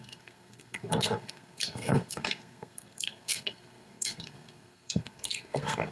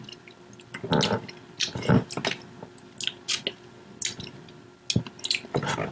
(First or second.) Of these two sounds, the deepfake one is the first